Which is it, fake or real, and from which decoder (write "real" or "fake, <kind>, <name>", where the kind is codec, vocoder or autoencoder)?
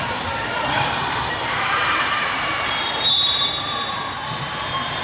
fake, vocoder, BigVGAN v2